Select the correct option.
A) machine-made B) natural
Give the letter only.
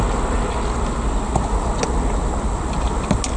B